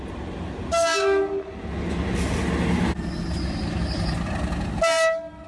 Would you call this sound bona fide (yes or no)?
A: yes